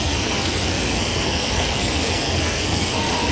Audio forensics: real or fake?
fake